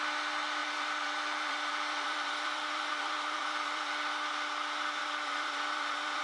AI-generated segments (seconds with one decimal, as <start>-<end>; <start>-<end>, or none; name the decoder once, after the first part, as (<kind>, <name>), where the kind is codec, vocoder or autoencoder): 0.6-4.3 (vocoder, BigVGAN v2); 5.0-6.2